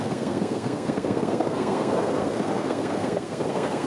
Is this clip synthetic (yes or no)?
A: yes